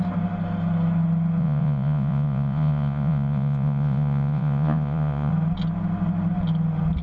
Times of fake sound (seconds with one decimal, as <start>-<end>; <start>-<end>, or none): 1.4-5.3